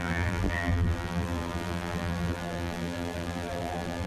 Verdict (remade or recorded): remade